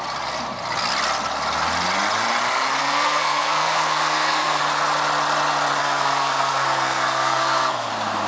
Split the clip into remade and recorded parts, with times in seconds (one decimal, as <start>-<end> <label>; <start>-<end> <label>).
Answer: 0.0-2.8 recorded; 2.8-4.6 remade; 4.6-5.8 recorded; 5.8-7.9 remade; 7.9-8.3 recorded